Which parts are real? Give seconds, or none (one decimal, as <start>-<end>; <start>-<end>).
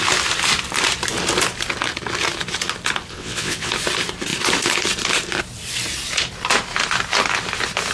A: 0.0-3.1; 3.7-7.9